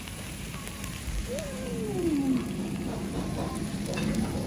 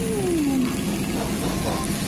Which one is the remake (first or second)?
first